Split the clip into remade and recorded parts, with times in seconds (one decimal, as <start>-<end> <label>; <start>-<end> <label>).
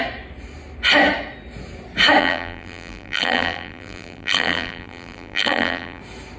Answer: 0.0-2.2 recorded; 2.2-6.0 remade; 6.0-6.4 recorded